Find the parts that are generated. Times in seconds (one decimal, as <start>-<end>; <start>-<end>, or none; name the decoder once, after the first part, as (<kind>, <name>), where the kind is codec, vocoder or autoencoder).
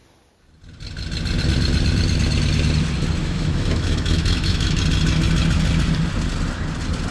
3.2-4.8 (autoencoder, DAC-VAE)